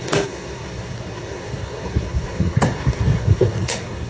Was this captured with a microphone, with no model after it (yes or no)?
no